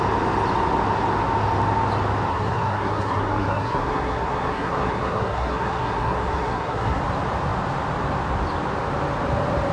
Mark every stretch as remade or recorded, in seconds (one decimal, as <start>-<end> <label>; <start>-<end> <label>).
0.0-2.3 recorded; 2.3-7.0 remade; 7.0-9.7 recorded